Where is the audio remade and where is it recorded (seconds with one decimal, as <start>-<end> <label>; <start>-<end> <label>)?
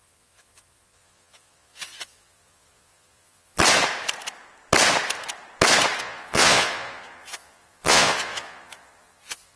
0.0-3.6 remade; 3.6-6.0 recorded; 6.0-9.6 remade